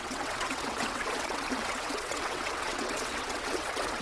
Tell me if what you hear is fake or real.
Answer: fake